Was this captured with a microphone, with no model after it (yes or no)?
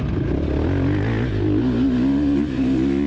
yes